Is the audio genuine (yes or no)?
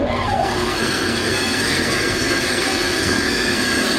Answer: no